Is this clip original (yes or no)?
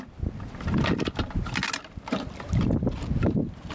yes